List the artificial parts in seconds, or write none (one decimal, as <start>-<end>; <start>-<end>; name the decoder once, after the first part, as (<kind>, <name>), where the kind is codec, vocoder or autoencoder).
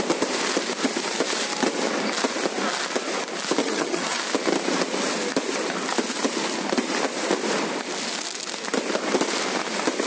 3.6-4.2 (vocoder, HiFi-GAN)